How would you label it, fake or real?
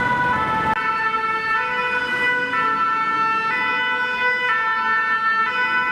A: real